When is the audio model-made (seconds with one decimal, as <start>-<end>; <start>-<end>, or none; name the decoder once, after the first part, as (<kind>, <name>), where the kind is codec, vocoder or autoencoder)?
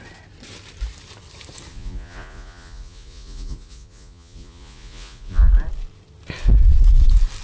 1.7-5.5 (vocoder, Vocos)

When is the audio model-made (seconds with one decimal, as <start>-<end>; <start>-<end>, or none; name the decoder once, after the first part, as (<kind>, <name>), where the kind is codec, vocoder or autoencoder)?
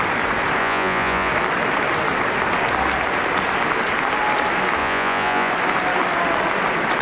0.6-1.3 (vocoder, Vocos); 4.8-5.5